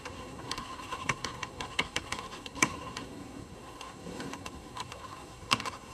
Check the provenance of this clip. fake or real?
fake